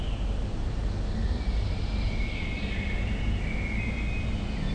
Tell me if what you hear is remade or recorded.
recorded